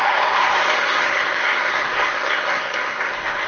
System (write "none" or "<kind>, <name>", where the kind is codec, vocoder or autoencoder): codec, SNAC